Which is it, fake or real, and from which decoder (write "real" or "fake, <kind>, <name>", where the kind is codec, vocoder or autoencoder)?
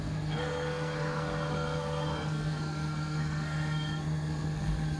fake, codec, SNAC